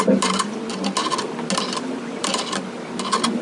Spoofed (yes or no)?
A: no